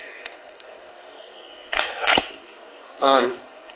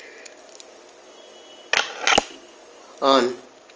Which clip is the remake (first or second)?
first